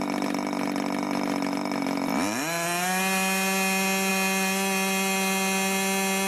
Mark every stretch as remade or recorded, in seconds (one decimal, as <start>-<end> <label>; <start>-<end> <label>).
0.0-6.3 recorded